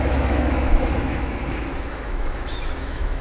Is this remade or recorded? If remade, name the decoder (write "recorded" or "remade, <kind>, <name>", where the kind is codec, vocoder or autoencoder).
remade, autoencoder, DAC-VAE